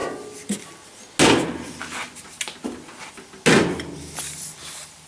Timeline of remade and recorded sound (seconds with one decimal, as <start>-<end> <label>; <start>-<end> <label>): 0.0-5.1 recorded